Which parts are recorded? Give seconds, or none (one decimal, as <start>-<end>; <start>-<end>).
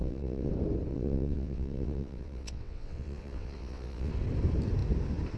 0.5-0.9; 4.1-5.4